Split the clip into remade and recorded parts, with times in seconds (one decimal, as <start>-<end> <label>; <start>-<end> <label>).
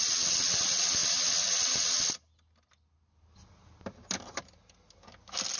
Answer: 0.0-5.6 recorded